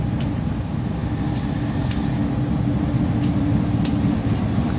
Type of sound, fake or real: real